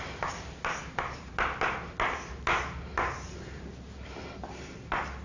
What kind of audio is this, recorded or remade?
recorded